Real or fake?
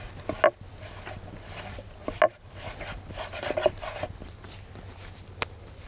real